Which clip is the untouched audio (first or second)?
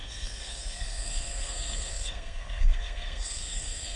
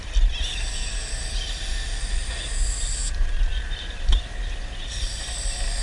second